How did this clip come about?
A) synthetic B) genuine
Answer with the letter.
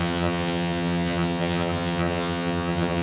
A